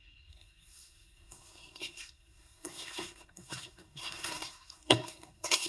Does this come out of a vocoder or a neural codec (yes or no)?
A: yes